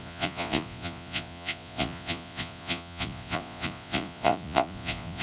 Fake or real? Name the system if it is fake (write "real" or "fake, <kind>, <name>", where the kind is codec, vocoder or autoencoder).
fake, vocoder, Vocos